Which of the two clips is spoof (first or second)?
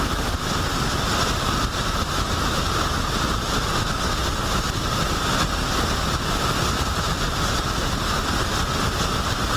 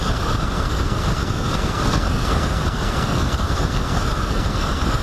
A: second